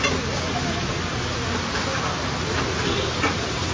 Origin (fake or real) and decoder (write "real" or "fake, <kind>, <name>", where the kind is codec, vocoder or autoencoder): real